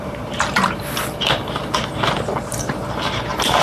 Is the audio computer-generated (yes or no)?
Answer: yes